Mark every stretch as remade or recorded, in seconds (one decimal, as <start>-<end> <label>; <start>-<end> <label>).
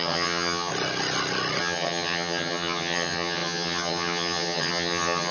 0.0-0.7 remade; 0.7-1.6 recorded; 1.6-5.3 remade